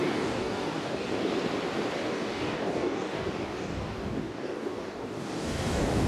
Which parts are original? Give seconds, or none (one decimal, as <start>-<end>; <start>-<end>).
1.3-2.0